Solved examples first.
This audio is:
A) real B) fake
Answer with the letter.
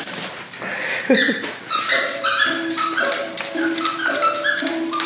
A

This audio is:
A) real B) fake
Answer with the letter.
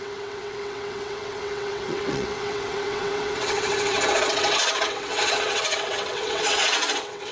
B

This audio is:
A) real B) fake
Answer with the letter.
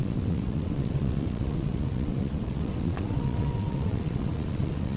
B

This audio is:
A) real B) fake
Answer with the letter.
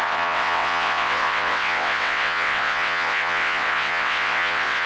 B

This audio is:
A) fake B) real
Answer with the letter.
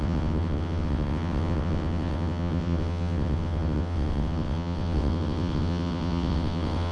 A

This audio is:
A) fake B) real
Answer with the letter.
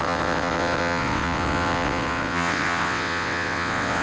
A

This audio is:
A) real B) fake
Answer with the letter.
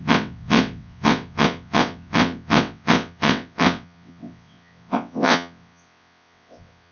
B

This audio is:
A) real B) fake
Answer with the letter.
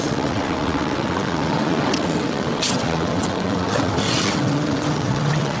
B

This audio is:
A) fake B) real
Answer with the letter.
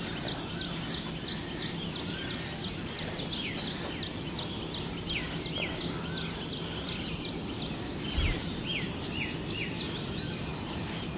B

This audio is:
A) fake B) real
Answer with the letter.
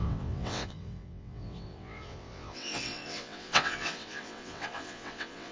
A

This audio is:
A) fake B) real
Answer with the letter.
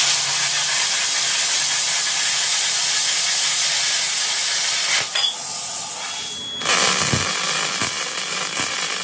B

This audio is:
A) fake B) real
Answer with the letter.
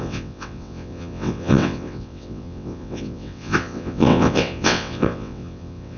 A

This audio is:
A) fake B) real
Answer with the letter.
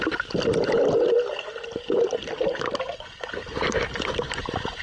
B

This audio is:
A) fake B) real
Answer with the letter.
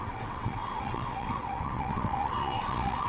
A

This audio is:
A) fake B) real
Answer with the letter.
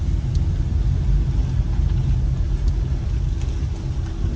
B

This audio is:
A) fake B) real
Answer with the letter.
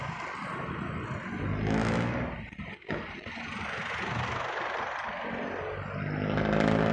B